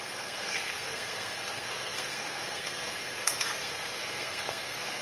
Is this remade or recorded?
remade